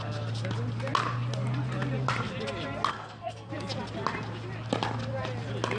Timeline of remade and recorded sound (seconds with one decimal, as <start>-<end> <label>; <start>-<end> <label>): 0.0-2.9 recorded; 2.9-3.5 remade; 3.5-5.8 recorded